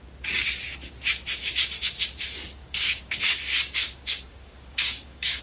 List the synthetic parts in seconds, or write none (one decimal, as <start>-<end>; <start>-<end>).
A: 1.4-1.9; 2.6-5.4